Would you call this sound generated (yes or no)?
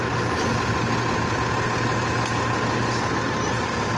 no